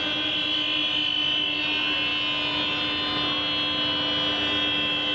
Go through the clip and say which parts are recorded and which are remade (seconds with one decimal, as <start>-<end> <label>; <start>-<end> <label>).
0.0-5.1 recorded